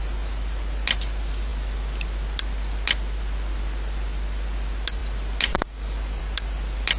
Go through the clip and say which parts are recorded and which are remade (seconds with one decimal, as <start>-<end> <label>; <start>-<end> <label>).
0.0-7.0 recorded

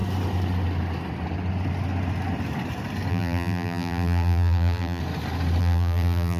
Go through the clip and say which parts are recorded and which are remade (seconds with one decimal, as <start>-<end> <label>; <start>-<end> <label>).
0.0-3.1 recorded; 3.1-5.0 remade; 5.0-5.6 recorded; 5.6-6.4 remade